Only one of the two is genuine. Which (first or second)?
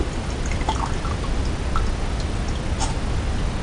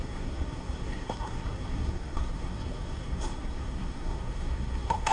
first